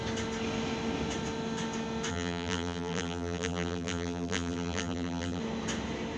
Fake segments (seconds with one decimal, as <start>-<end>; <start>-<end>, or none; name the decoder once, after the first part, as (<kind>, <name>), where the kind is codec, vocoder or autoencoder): 2.1-5.4 (vocoder, BigVGAN v2)